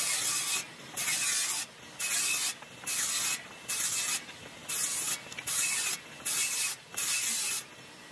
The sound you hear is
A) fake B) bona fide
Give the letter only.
B